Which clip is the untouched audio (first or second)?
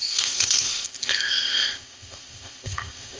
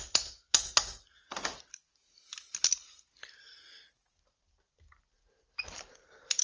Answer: second